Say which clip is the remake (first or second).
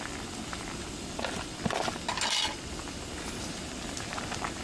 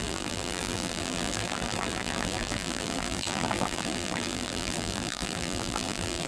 second